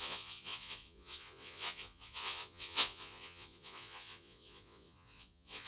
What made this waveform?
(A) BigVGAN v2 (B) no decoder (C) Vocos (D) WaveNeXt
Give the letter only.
C